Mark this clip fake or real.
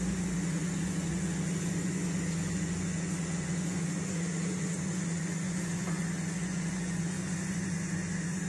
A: fake